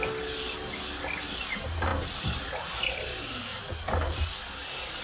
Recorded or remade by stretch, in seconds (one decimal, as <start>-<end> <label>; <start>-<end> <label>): 0.0-5.0 recorded